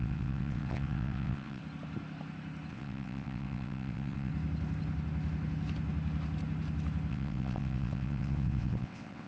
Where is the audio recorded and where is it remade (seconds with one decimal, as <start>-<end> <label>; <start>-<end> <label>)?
0.0-1.6 remade; 1.6-2.7 recorded; 2.7-4.3 remade; 4.3-7.1 recorded; 7.1-9.3 remade